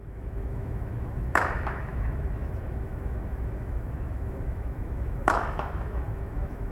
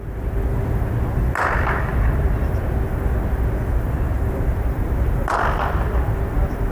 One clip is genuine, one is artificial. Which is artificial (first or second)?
first